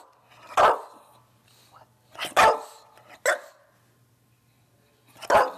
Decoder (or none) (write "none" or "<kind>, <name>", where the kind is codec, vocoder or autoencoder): none